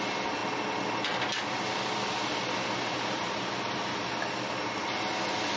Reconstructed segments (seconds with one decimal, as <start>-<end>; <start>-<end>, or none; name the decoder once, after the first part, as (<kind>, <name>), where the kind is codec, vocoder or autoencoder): 2.9-3.5 (vocoder, BigVGAN v2)